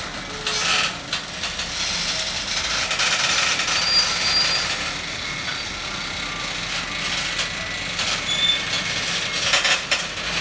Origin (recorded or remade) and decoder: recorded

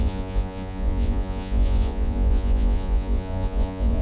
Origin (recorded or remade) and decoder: remade, vocoder, Vocos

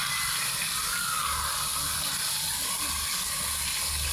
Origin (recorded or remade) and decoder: recorded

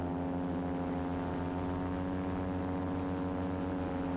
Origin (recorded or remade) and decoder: recorded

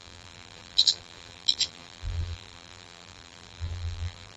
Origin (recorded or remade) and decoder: remade, vocoder, BigVGAN v2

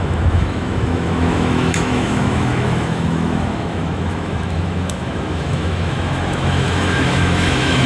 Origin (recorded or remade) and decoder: remade, autoencoder, DAC-VAE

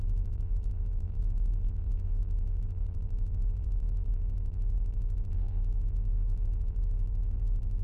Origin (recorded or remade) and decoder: remade, vocoder, BigVGAN v2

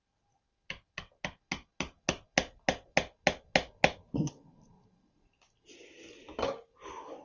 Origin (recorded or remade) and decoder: recorded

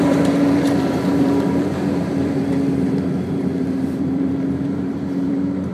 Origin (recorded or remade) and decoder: remade, vocoder, BigVGAN v2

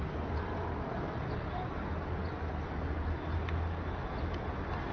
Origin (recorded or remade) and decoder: recorded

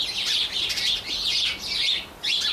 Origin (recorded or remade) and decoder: recorded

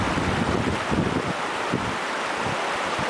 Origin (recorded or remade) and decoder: recorded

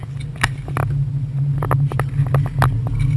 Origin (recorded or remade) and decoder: recorded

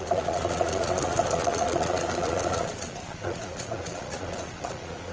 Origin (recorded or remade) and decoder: remade, vocoder, Vocos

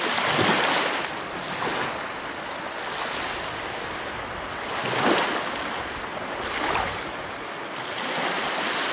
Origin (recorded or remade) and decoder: recorded